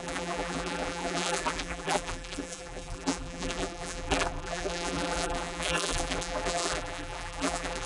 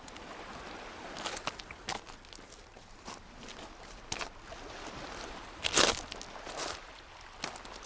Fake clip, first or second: first